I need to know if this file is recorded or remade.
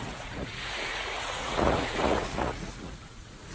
remade